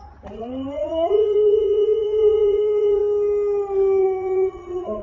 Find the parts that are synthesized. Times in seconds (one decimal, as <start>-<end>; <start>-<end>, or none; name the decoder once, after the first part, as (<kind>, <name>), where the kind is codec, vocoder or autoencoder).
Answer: 0.0-3.0 (vocoder, Vocos); 4.0-5.0